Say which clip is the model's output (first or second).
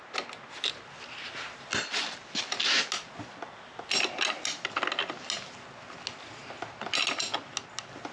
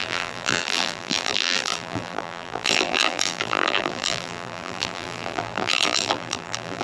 second